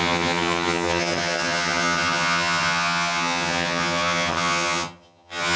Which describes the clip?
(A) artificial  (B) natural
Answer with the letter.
A